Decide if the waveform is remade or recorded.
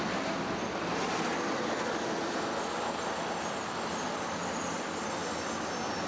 recorded